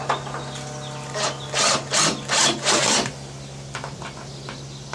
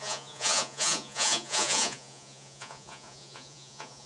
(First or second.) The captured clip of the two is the first